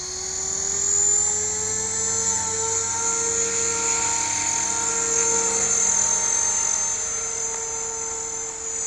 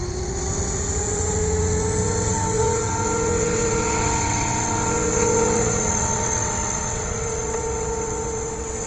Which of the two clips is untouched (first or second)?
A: first